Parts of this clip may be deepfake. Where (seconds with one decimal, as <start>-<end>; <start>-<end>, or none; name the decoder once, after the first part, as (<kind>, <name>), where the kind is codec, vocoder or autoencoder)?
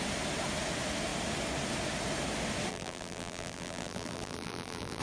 2.7-5.0 (vocoder, BigVGAN v2)